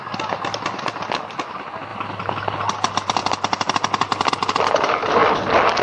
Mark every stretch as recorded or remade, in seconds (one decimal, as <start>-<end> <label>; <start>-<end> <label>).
0.0-5.8 recorded